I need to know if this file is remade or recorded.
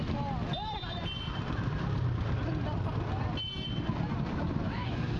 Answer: recorded